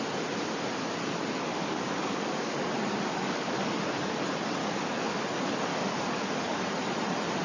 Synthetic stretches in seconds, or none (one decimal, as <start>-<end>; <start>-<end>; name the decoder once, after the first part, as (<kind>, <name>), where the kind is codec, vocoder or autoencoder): 1.5-2.6 (codec, DAC); 3.1-3.7; 4.6-5.2; 5.7-6.6